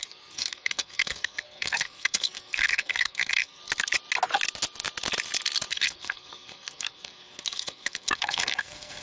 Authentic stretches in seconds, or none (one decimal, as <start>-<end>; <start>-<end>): 3.6-5.7